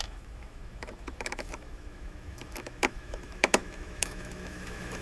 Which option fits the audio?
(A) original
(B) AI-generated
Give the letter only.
B